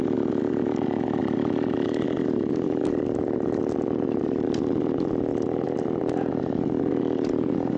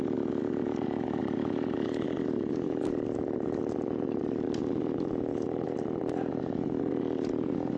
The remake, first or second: first